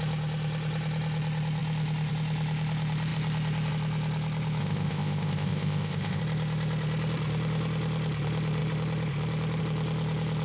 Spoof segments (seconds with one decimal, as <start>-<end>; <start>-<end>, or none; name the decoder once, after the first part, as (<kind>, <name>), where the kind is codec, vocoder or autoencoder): 4.6-6.2 (codec, ZipCodec)